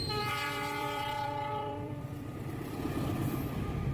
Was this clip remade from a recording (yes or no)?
yes